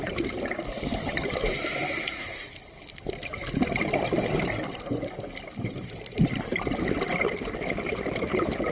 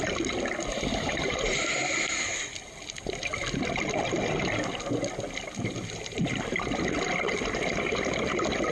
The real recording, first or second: second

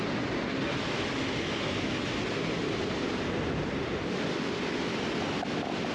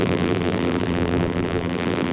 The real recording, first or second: first